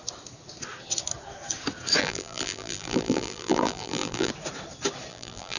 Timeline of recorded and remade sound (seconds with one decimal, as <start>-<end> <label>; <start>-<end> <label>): 0.0-2.0 recorded; 2.0-4.3 remade; 4.3-5.1 recorded; 5.1-5.6 remade